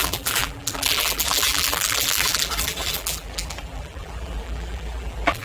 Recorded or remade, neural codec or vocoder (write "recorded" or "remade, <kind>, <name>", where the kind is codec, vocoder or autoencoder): remade, vocoder, BigVGAN v2